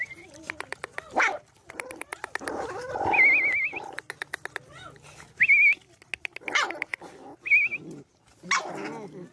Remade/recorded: recorded